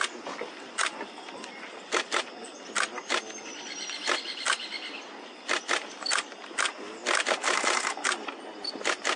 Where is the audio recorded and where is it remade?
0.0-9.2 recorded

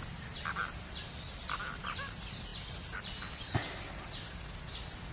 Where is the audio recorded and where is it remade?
0.0-5.1 recorded

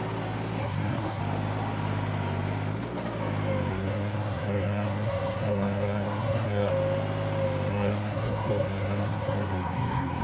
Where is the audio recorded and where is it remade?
0.0-0.6 recorded; 0.6-1.2 remade; 1.2-3.7 recorded; 3.7-6.7 remade; 6.7-7.7 recorded; 7.7-10.2 remade

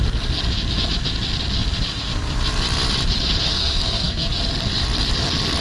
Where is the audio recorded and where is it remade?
0.0-3.5 recorded; 3.5-4.3 remade; 4.3-5.6 recorded

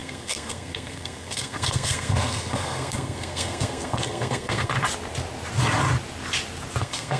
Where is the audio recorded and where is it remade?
0.0-4.7 remade; 4.7-6.8 recorded; 6.8-7.2 remade

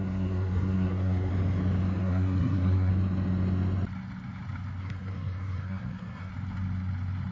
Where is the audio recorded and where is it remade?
0.0-1.3 remade; 1.3-2.0 recorded; 2.0-2.9 remade; 2.9-4.8 recorded; 4.8-6.3 remade; 6.3-7.3 recorded